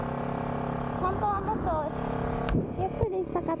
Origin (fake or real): real